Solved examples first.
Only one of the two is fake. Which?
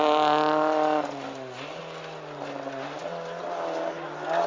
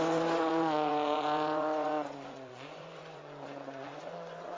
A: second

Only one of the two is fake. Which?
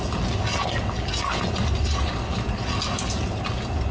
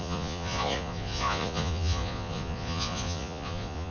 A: second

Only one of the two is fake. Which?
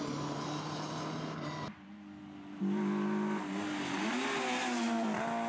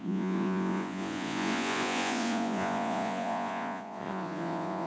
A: second